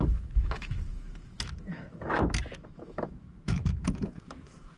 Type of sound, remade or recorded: remade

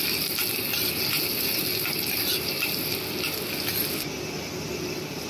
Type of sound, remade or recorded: recorded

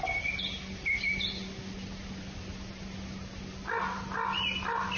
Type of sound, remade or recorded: recorded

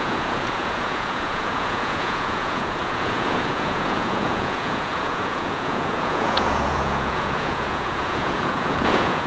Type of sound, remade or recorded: remade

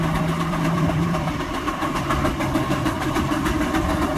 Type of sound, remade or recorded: remade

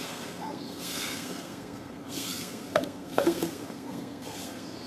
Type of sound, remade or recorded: remade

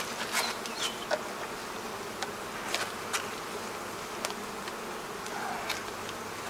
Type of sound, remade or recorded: recorded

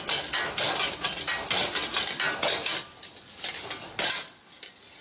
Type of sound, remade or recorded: recorded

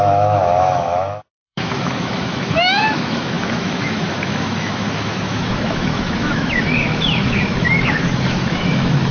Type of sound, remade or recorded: remade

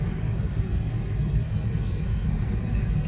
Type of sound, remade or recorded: remade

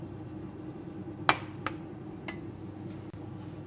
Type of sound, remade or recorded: recorded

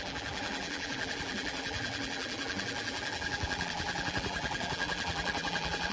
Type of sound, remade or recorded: remade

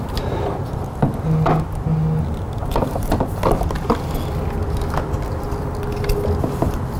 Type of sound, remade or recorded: recorded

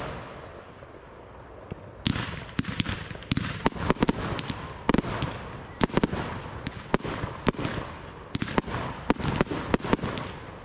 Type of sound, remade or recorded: recorded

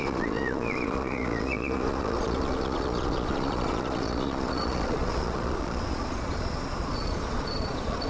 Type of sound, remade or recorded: remade